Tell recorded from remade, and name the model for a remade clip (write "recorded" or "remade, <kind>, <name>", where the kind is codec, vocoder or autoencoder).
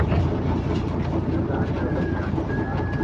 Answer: recorded